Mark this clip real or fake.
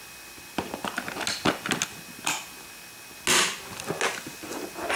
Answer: real